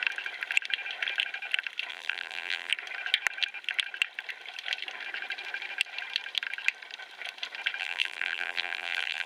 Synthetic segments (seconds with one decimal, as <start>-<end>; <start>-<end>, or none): 1.9-2.7; 7.8-9.3